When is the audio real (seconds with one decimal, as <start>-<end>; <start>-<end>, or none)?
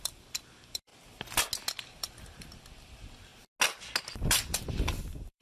0.9-1.8; 3.3-4.1